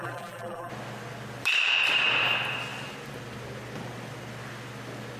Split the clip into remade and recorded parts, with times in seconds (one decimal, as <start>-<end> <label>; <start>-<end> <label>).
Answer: 0.0-0.7 remade; 0.7-5.2 recorded

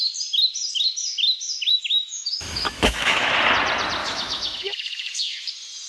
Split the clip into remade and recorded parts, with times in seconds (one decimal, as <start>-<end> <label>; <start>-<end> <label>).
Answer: 0.0-1.7 recorded; 1.7-3.3 remade; 3.3-4.0 recorded; 4.0-5.5 remade; 5.5-5.9 recorded

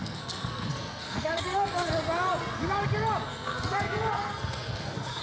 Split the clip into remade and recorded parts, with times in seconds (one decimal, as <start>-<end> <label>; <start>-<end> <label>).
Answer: 0.0-1.9 remade; 1.9-3.2 recorded; 3.2-5.2 remade

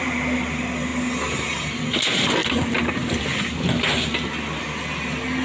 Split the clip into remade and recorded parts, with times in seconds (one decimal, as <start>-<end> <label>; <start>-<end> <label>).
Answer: 0.0-5.4 recorded

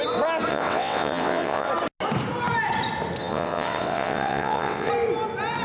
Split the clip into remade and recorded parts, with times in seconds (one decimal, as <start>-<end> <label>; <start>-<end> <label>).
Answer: 0.0-0.5 recorded; 0.5-1.7 remade; 1.7-3.2 recorded; 3.2-4.9 remade; 4.9-5.6 recorded

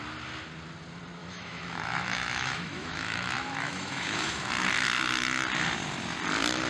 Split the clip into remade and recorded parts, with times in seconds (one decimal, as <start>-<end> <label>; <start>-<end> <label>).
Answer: 0.0-1.2 recorded; 1.2-4.5 remade; 4.5-6.7 recorded

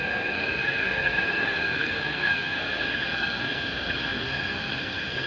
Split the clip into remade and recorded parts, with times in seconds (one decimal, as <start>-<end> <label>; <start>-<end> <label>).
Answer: 0.0-5.3 remade